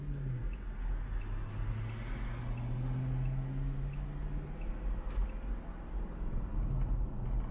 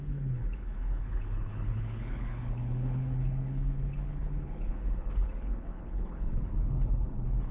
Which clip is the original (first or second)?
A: first